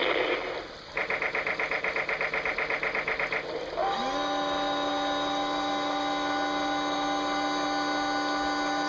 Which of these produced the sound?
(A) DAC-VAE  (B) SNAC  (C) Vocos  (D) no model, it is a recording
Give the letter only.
D